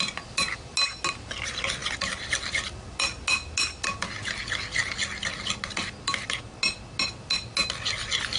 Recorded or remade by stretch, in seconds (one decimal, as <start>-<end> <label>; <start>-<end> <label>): 0.0-8.4 recorded